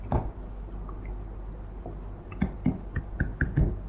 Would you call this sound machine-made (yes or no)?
no